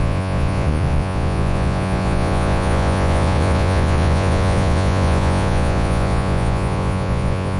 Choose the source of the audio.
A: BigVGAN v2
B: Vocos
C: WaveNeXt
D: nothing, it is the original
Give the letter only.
B